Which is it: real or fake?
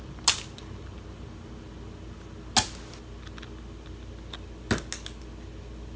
real